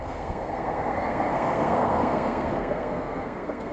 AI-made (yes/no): yes